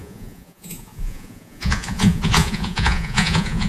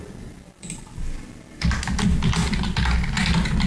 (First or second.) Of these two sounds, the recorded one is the second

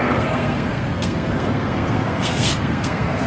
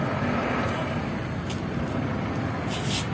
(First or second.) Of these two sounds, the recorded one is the second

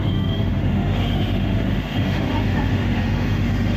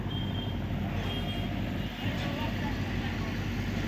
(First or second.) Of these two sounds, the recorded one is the second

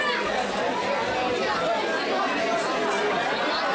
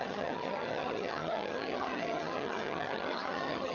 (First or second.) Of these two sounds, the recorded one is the first